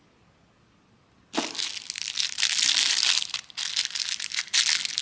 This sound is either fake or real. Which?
real